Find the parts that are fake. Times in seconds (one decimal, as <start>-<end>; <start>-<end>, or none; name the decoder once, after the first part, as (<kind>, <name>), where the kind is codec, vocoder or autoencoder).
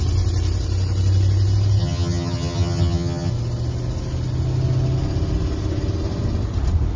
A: 1.8-3.3 (vocoder, HiFi-GAN)